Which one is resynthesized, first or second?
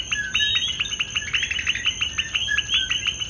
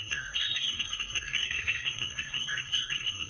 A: second